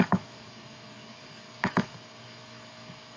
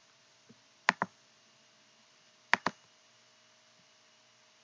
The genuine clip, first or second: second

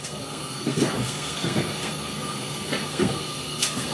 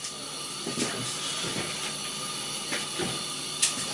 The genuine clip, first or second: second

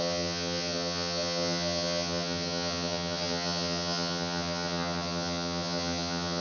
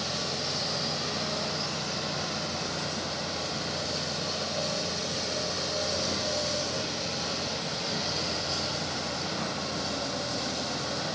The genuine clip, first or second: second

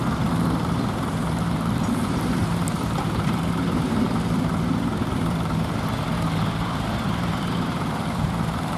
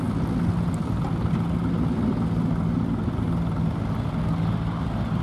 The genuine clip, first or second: second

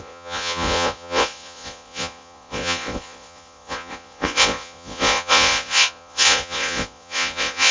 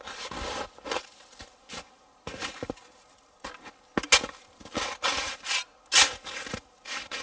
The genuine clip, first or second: second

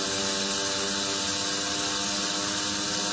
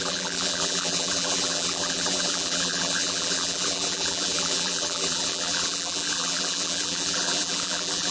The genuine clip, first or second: first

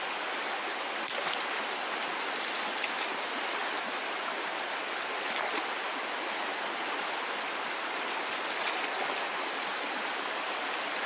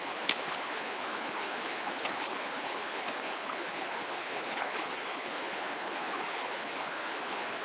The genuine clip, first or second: first